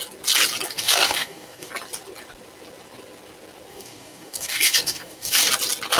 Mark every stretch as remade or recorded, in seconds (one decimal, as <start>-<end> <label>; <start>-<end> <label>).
0.0-0.7 recorded; 0.7-1.7 remade; 1.7-3.7 recorded; 3.7-5.5 remade; 5.5-6.0 recorded